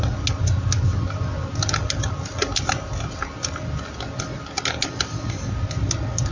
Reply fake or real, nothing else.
real